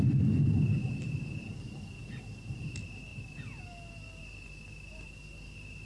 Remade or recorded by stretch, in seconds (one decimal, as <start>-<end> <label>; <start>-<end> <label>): 0.0-5.9 recorded